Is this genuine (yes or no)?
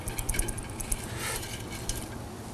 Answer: yes